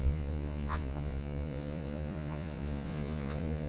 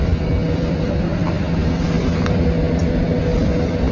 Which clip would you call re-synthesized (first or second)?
first